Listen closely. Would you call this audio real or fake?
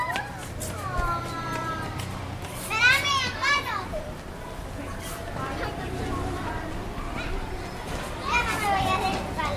real